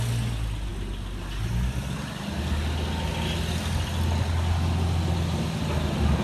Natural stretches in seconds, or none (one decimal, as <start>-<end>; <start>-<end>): 0.0-6.2